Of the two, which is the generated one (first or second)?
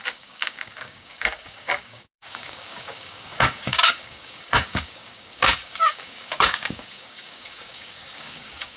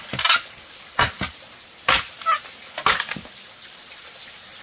first